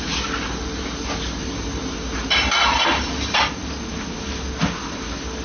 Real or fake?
real